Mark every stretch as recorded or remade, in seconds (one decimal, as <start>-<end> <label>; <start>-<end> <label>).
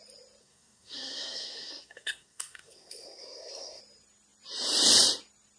0.0-0.4 recorded; 0.4-3.8 remade; 3.8-5.6 recorded